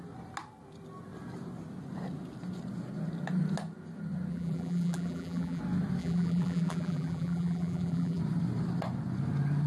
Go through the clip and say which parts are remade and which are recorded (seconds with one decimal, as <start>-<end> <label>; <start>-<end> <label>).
0.0-4.3 recorded; 4.3-5.6 remade; 5.6-6.0 recorded; 6.0-8.2 remade; 8.2-9.7 recorded